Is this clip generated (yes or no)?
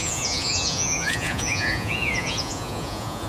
yes